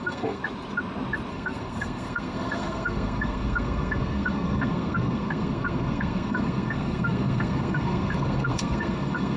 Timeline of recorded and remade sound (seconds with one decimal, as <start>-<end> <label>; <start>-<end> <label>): 0.0-0.4 remade; 0.4-1.3 recorded; 1.3-9.4 remade